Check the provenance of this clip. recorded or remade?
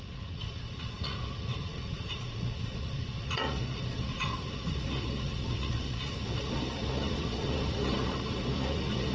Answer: remade